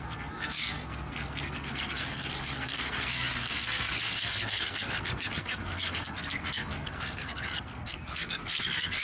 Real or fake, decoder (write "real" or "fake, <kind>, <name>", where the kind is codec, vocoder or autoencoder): fake, codec, SNAC